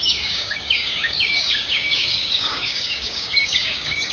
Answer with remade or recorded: remade